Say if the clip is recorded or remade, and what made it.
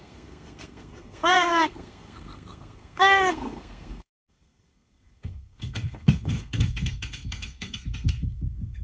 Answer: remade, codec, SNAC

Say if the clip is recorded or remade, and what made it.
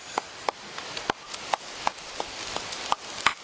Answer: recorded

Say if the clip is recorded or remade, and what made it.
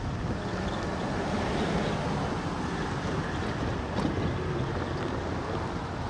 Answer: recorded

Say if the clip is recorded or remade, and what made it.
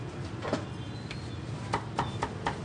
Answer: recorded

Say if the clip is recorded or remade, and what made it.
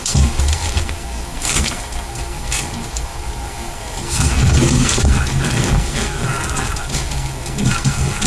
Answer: remade, codec, SNAC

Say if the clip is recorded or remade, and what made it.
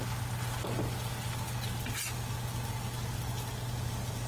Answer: recorded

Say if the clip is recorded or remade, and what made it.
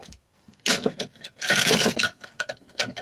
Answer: remade, codec, SNAC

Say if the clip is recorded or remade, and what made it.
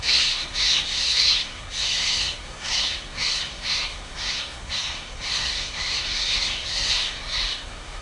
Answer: remade, codec, SNAC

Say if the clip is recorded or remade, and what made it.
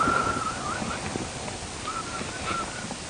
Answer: recorded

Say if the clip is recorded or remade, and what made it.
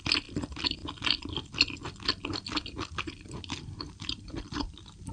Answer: recorded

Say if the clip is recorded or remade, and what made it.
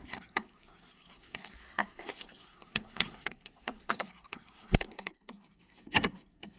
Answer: remade, codec, SNAC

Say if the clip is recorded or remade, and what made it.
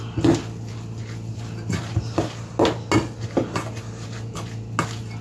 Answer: recorded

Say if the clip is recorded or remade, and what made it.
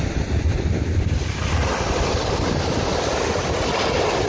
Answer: recorded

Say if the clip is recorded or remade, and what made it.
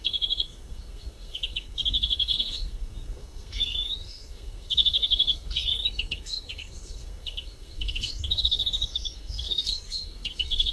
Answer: remade, codec, SNAC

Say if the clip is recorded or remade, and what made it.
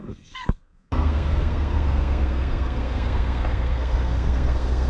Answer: remade, codec, SNAC